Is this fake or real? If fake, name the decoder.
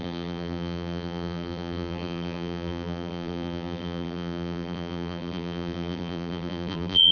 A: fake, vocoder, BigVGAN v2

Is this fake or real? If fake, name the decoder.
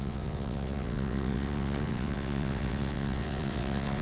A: fake, vocoder, WaveNeXt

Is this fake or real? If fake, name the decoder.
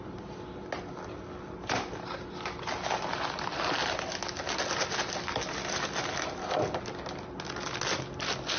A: real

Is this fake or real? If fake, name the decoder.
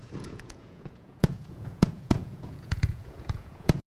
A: fake, vocoder, Vocos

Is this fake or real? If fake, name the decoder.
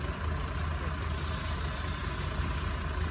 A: real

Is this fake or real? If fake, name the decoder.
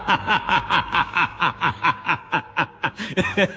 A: fake, codec, DAC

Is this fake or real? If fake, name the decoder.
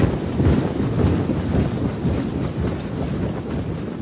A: real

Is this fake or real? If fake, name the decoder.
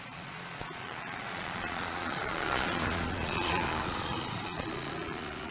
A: fake, vocoder, Vocos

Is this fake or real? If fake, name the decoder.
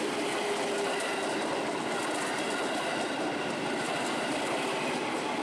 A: real